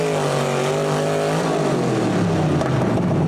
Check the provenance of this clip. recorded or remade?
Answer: recorded